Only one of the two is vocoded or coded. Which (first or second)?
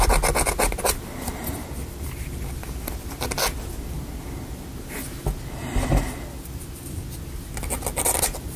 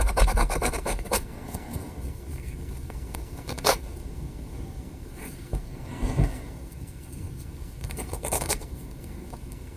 second